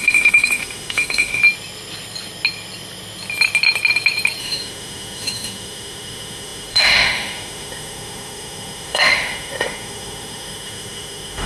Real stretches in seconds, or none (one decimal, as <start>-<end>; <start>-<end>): 1.4-4.4